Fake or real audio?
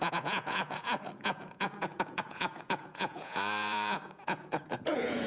fake